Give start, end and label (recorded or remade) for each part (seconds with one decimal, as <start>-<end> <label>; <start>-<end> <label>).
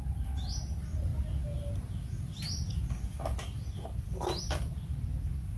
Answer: 0.0-5.6 recorded